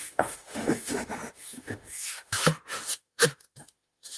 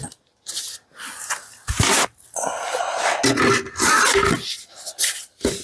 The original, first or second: second